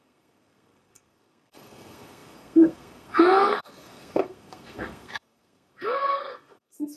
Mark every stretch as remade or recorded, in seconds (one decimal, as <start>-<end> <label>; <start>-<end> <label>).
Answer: 0.0-7.0 remade

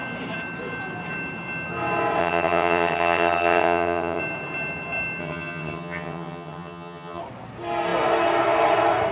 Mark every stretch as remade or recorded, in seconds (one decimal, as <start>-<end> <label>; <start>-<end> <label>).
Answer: 0.0-2.2 recorded; 2.2-4.2 remade; 4.2-5.2 recorded; 5.2-7.2 remade; 7.2-9.1 recorded